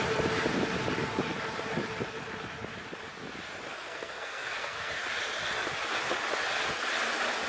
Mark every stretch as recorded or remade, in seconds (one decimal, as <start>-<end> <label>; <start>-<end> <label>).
0.0-3.7 recorded; 3.7-4.9 remade; 4.9-7.5 recorded